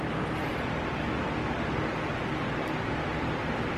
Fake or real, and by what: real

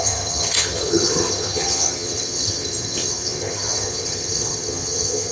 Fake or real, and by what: fake, vocoder, HiFi-GAN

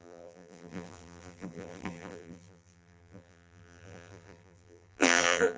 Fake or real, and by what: fake, vocoder, BigVGAN v2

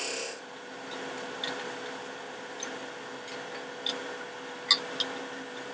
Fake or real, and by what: real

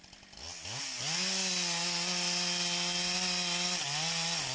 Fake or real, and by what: real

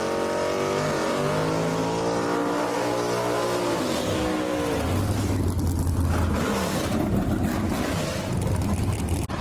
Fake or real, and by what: real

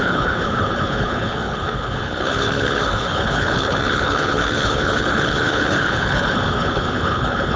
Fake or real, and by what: fake, codec, HILCodec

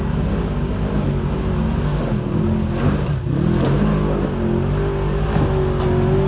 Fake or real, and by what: real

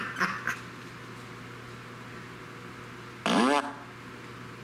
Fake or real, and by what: real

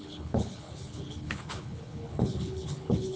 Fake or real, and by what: fake, codec, HILCodec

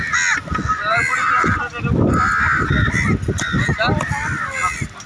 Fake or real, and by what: real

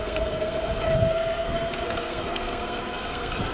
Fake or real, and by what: fake, codec, SNAC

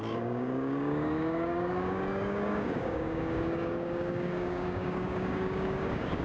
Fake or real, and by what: fake, codec, DAC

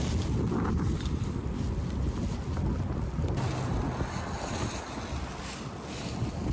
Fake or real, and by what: real